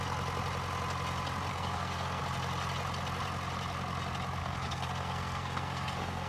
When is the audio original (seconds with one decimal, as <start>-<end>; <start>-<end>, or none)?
0.0-1.5; 2.2-4.4